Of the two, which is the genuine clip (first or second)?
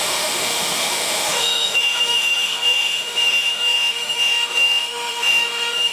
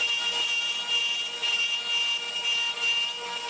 second